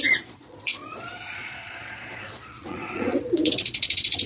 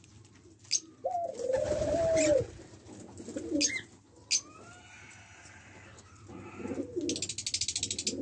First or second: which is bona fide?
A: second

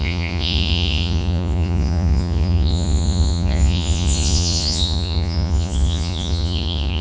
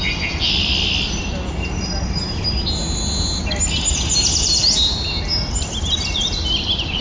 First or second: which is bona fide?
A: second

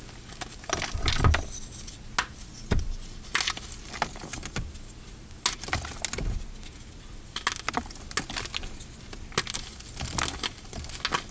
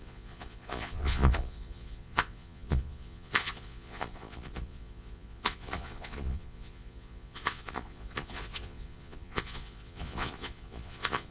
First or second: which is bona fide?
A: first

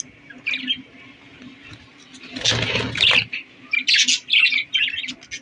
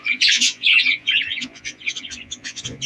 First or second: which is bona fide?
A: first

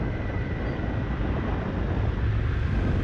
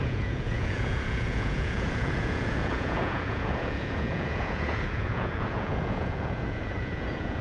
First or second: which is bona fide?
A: first